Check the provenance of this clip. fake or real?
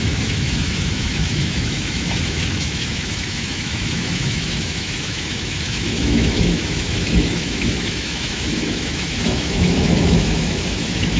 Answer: fake